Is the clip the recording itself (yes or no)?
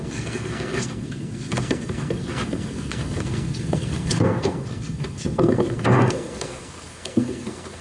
no